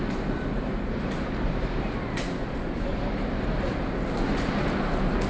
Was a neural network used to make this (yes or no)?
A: no